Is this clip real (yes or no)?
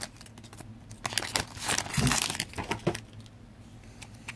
yes